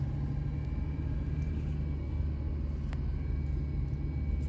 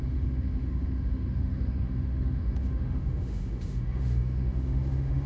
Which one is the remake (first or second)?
second